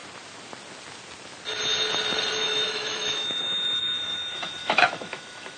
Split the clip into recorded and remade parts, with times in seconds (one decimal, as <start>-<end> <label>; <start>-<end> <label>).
0.0-2.4 recorded; 2.4-5.6 remade